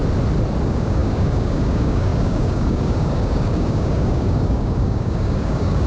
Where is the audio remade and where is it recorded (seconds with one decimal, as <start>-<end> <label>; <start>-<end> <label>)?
0.0-0.6 recorded; 0.6-5.9 remade